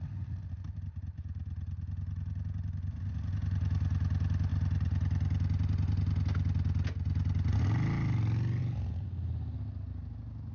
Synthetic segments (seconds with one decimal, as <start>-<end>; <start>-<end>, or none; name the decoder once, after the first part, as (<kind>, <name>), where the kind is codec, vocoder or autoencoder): none

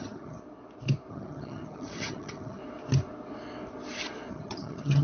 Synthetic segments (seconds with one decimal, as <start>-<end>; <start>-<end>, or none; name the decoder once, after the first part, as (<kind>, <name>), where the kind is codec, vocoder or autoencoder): 0.0-0.4 (vocoder, HiFi-GAN); 1.1-2.6; 4.3-5.0

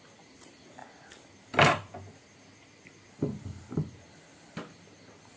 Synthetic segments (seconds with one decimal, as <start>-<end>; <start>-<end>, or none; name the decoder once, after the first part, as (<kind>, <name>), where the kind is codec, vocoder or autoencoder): none

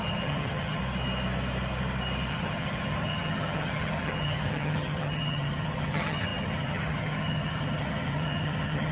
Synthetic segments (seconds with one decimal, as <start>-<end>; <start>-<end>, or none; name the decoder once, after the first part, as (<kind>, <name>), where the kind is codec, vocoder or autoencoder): 0.0-0.8 (vocoder, HiFi-GAN); 2.3-8.9

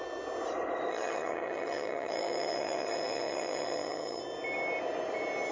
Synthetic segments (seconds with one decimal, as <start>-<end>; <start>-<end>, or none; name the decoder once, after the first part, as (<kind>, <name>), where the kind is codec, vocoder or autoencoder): 0.9-4.2 (vocoder, HiFi-GAN)

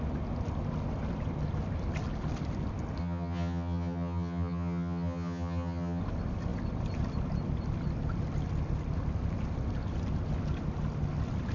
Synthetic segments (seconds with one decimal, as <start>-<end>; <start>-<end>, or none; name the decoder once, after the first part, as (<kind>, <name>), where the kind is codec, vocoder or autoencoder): 3.0-6.0 (vocoder, HiFi-GAN)